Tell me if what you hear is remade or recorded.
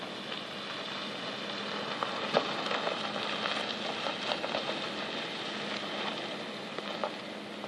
recorded